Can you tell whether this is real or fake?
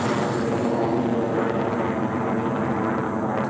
real